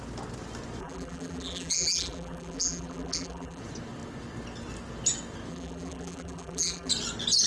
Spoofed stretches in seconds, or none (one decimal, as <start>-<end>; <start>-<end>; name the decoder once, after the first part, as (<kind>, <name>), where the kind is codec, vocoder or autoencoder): 0.8-3.6 (vocoder, BigVGAN v2); 5.5-6.9